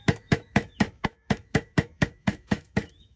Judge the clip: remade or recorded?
remade